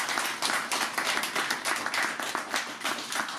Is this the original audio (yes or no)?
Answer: yes